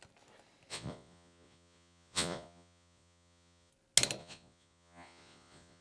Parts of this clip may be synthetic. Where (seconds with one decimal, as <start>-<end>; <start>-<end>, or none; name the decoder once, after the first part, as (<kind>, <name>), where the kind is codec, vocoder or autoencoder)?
0.7-3.7 (vocoder, Vocos); 4.2-5.8